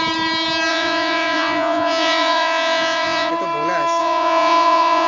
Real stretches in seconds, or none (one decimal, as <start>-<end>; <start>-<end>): 0.0-0.7; 3.3-4.0